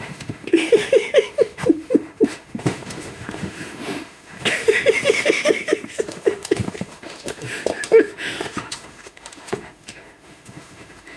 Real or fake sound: fake